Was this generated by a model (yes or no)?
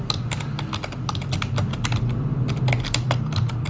no